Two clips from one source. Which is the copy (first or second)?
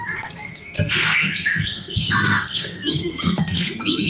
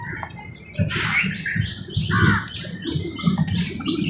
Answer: first